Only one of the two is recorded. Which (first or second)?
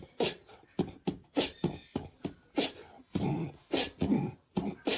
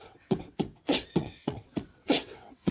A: first